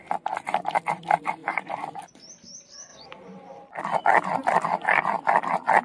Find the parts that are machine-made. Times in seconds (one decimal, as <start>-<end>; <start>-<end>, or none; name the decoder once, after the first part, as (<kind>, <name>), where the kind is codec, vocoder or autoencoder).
1.4-2.2 (vocoder, BigVGAN v2)